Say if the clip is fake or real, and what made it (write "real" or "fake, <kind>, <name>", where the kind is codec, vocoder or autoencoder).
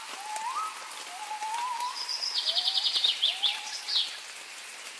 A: real